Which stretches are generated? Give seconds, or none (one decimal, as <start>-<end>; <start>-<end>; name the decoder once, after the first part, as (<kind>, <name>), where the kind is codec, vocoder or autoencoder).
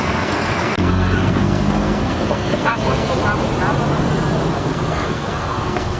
0.0-3.2 (codec, SNAC); 4.5-6.0